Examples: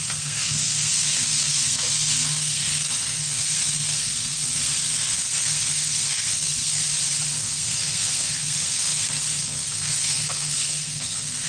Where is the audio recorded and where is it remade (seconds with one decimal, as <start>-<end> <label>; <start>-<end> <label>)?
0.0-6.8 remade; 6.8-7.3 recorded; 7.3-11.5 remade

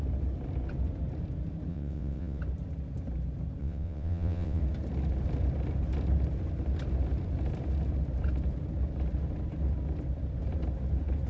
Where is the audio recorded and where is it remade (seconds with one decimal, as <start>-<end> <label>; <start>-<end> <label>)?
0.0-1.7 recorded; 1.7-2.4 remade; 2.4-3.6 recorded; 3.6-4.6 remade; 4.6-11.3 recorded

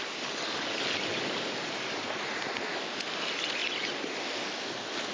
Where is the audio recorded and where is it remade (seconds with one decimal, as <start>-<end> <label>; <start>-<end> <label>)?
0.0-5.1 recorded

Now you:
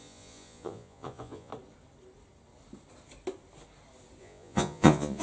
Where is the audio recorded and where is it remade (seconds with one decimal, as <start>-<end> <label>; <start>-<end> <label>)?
0.0-1.5 remade; 1.5-4.2 recorded; 4.2-5.2 remade